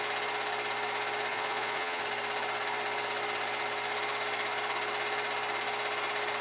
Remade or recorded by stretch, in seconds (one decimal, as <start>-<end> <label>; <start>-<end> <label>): 0.0-1.3 recorded; 1.3-2.0 remade; 2.0-6.4 recorded